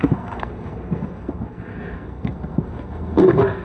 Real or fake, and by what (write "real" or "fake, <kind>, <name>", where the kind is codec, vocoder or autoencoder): fake, codec, SNAC